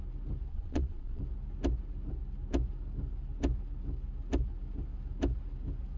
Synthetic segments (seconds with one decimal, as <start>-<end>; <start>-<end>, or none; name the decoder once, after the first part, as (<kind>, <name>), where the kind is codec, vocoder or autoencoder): 0.5-1.2 (vocoder, Vocos)